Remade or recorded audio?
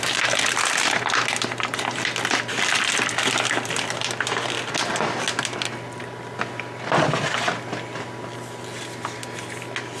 recorded